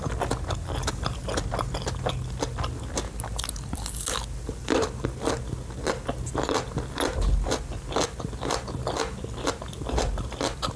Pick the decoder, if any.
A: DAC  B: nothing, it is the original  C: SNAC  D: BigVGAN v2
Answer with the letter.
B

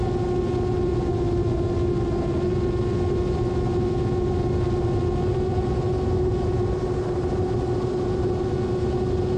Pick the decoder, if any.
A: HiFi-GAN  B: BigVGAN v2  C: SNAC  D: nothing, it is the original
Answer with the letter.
D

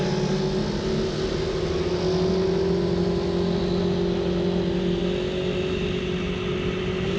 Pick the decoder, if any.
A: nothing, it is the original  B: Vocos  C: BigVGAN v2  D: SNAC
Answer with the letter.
A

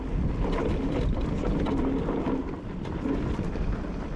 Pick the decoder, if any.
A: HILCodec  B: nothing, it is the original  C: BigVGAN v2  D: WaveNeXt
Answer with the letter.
B